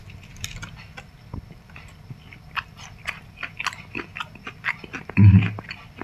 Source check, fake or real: real